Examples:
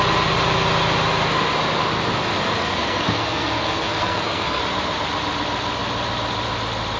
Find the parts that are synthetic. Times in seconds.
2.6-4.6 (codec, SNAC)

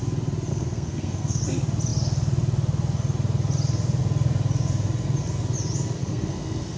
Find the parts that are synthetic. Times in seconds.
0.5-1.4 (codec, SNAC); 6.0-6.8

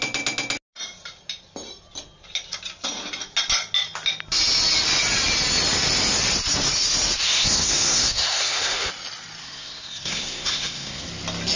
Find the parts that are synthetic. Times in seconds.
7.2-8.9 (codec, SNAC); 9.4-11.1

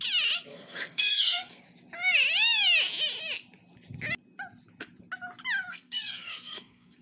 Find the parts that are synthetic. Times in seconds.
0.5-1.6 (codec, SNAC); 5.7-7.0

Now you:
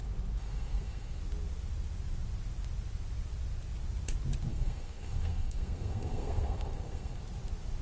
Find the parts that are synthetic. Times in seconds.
0.4-1.2 (codec, SNAC); 4.5-7.2

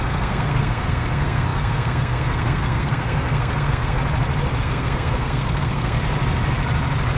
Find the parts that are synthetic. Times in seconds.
0.0-4.0 (codec, SNAC); 4.6-6.0